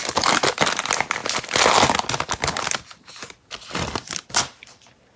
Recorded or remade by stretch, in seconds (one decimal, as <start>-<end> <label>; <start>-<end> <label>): 0.0-5.2 recorded